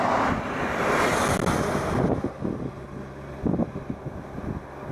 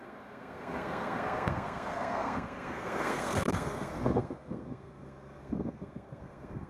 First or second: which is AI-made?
second